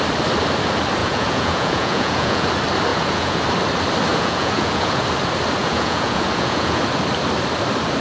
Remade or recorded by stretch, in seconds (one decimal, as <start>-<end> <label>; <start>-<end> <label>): 0.0-1.0 recorded; 1.0-2.5 remade; 2.5-2.9 recorded; 2.9-3.4 remade; 3.4-4.1 recorded; 4.1-5.0 remade; 5.0-5.6 recorded; 5.6-6.8 remade; 6.8-8.0 recorded